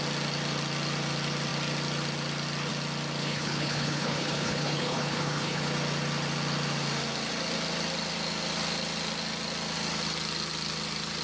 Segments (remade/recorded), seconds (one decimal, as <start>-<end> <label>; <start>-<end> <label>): 0.0-3.2 recorded; 3.2-5.6 remade; 5.6-11.2 recorded